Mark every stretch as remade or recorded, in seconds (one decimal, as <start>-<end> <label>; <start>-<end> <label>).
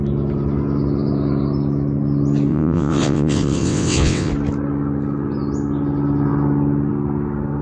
0.0-2.5 recorded; 2.5-4.3 remade; 4.3-7.6 recorded